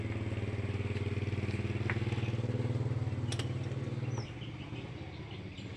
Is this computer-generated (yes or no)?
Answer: no